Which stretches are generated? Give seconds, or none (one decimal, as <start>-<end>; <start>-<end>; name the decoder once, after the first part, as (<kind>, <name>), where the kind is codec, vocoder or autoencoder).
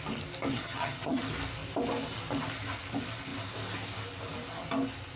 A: 0.5-1.2 (vocoder, HiFi-GAN)